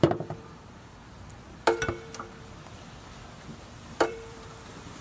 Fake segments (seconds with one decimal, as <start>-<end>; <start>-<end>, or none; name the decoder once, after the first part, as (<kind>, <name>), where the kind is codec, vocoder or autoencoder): 0.0-1.0 (vocoder, BigVGAN v2); 4.0-5.0

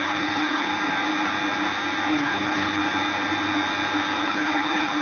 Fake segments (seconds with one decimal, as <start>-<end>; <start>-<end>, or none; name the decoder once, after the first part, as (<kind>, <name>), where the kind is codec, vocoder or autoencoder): 0.0-0.7 (codec, HILCodec); 2.1-2.8; 4.2-5.0